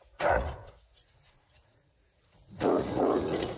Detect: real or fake fake